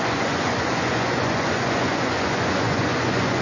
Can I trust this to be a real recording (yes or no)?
no